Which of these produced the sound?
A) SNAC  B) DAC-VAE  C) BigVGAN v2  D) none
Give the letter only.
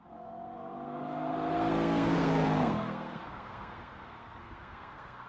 A